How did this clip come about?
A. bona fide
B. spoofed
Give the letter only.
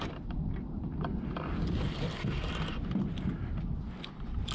A